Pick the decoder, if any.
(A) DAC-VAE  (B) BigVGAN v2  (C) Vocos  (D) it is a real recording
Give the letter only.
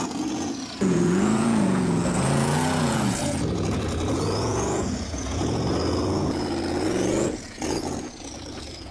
C